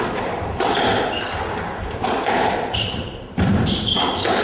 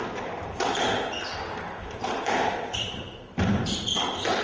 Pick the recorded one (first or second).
second